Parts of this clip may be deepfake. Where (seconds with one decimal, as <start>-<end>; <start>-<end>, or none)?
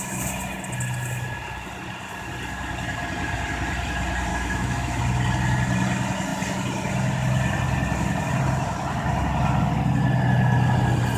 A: 4.3-5.0